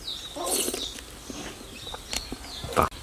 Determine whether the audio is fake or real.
real